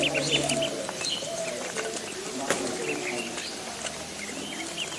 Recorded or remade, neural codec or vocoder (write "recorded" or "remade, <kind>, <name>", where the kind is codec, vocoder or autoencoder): recorded